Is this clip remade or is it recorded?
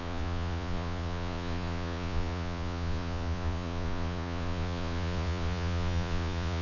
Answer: remade